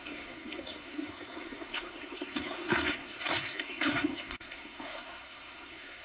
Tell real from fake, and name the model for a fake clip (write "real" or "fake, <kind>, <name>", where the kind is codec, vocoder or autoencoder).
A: fake, codec, SNAC